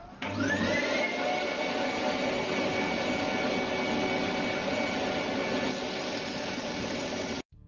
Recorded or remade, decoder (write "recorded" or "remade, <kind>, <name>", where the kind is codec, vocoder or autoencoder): recorded